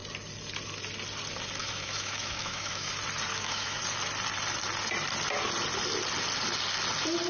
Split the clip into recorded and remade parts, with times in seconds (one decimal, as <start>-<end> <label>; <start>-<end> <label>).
0.0-1.6 recorded; 1.6-2.9 remade; 2.9-3.3 recorded; 3.3-3.8 remade; 3.8-7.3 recorded